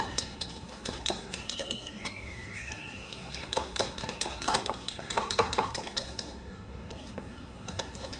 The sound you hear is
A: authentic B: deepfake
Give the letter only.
B